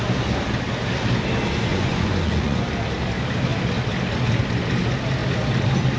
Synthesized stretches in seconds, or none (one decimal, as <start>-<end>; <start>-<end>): 1.7-2.6